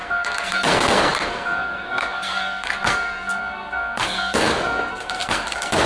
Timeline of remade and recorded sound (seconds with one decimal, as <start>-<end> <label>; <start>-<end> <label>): 0.0-5.9 remade